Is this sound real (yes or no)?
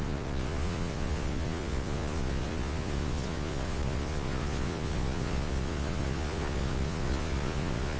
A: no